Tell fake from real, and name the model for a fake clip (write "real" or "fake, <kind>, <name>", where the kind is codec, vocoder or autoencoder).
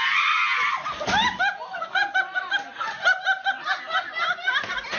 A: real